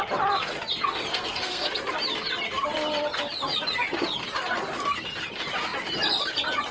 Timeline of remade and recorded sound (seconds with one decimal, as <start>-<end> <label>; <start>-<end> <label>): 0.0-1.1 recorded; 1.1-1.7 remade; 1.7-6.7 recorded